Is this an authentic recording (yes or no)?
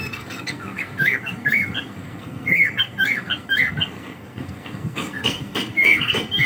no